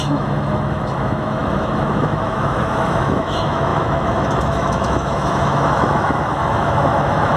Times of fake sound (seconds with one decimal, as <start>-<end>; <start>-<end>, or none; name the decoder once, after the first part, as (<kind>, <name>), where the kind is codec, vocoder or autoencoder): 0.0-7.4 (autoencoder, DAC-VAE)